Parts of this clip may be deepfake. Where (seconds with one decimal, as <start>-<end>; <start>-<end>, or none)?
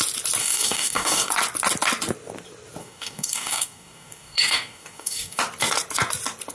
0.4-1.3; 2.8-5.4